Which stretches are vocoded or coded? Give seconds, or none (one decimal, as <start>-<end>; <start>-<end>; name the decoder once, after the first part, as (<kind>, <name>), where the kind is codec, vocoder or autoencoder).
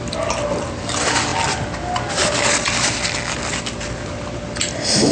none